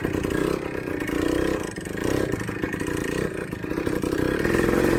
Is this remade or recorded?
remade